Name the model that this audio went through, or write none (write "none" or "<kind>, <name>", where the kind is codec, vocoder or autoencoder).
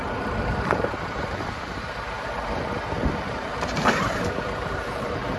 vocoder, BigVGAN v2